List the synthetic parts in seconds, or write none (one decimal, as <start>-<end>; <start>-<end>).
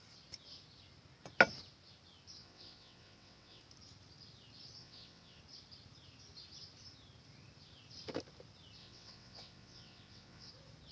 2.4-3.6; 4.8-5.4; 8.8-10.5